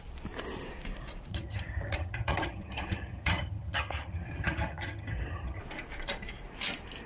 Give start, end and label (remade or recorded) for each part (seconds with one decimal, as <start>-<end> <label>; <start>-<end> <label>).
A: 0.0-1.3 recorded; 1.3-5.6 remade; 5.6-7.1 recorded